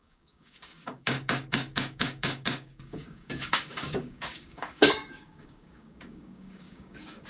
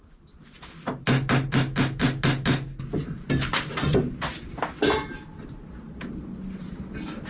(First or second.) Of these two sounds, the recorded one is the second